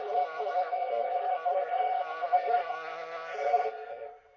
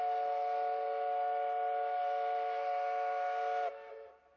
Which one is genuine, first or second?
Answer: second